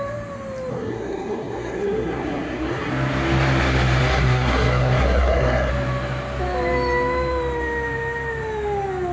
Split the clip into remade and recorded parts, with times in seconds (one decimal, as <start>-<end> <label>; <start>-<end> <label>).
0.0-0.7 recorded; 0.7-2.9 remade; 2.9-4.0 recorded; 4.0-5.7 remade; 5.7-9.1 recorded